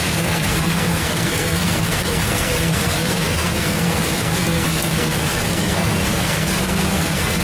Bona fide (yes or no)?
no